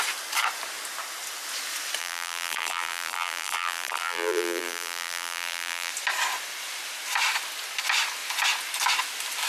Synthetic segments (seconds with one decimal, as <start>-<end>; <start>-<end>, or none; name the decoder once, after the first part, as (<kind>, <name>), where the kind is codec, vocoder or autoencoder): 2.0-5.9 (vocoder, BigVGAN v2)